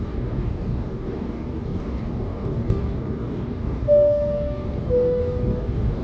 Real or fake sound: fake